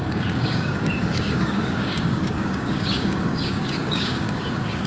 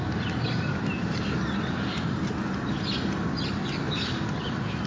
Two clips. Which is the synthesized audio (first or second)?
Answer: first